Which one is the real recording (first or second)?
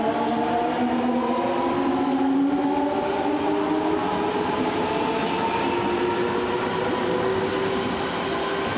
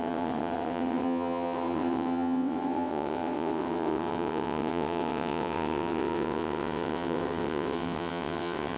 first